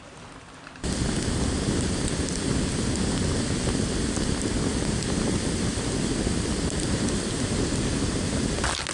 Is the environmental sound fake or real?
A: real